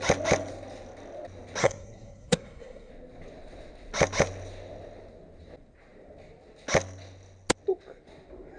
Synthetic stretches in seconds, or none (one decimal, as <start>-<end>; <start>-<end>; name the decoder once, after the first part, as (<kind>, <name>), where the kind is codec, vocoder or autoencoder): 1.6-2.9 (codec, SNAC)